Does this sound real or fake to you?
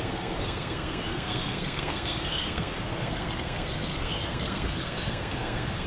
fake